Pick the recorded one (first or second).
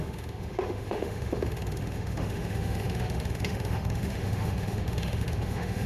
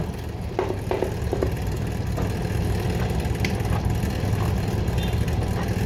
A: second